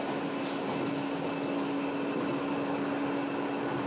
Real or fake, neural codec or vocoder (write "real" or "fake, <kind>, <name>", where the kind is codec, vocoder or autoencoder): real